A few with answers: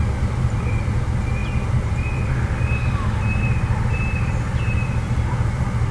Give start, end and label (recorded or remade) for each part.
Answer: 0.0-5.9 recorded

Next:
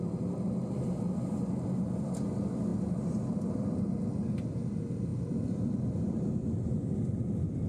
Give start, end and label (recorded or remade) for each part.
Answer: 0.0-5.1 recorded; 5.1-6.3 remade; 6.3-7.7 recorded

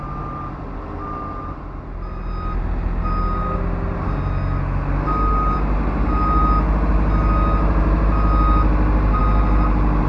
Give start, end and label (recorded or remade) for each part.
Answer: 0.0-10.1 recorded

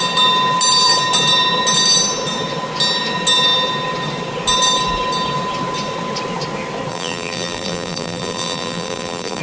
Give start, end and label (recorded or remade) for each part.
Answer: 0.0-6.9 recorded; 6.9-9.4 remade

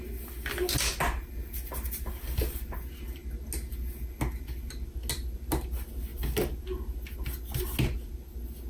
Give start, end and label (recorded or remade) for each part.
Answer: 0.0-8.7 recorded

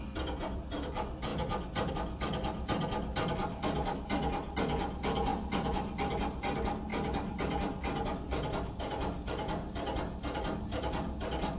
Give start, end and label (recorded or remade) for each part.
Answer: 0.0-5.3 recorded; 5.3-6.4 remade; 6.4-6.9 recorded; 6.9-7.8 remade; 7.8-11.6 recorded